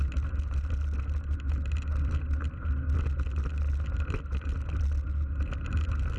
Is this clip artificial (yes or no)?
no